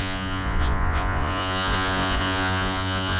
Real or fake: fake